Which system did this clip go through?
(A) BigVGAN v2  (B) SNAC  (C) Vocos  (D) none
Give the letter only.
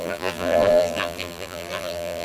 A